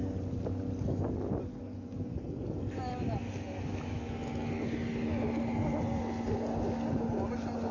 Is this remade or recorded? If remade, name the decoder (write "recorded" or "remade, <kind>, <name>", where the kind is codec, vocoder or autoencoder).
recorded